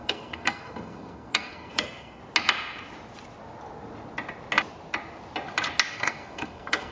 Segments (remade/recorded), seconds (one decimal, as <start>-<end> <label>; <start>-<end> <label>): 0.0-2.2 remade; 2.2-5.9 recorded; 5.9-6.9 remade